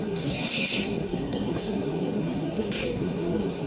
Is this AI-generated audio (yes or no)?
yes